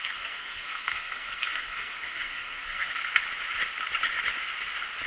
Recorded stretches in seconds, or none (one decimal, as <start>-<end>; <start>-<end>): 3.0-5.1